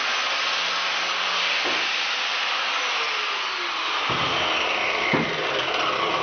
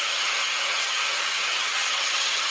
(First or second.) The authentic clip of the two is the first